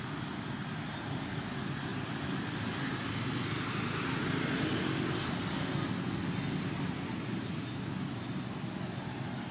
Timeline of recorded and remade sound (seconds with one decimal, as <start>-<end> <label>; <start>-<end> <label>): 0.0-9.5 recorded